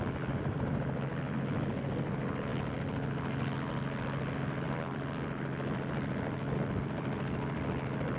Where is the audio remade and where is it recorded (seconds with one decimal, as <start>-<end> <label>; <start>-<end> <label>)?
0.0-8.2 recorded